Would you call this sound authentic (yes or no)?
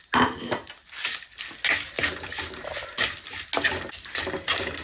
yes